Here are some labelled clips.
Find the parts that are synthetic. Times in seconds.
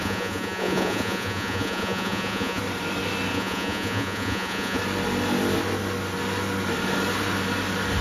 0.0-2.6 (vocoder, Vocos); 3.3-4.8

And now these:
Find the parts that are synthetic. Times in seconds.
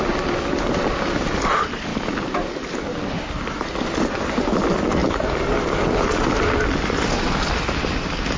none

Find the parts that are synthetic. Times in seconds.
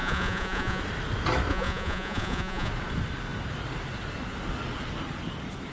0.0-0.8 (vocoder, Vocos); 1.5-2.7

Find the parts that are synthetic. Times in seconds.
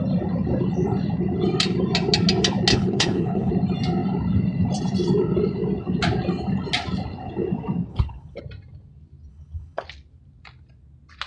2.7-3.5 (codec, HILCodec); 7.9-8.4; 9.3-9.8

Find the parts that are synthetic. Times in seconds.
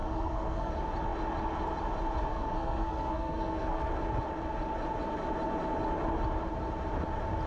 0.0-0.7 (codec, SNAC); 2.3-3.9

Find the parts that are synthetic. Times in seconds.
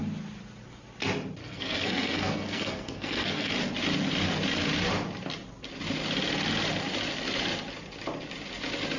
1.4-3.5 (codec, SNAC)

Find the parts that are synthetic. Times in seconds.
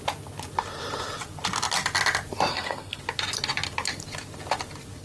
2.5-3.0 (codec, SNAC)